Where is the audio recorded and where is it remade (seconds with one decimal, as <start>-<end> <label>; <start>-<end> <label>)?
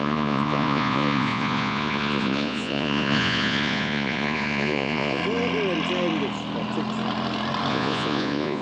0.0-5.2 remade; 5.2-7.7 recorded; 7.7-8.6 remade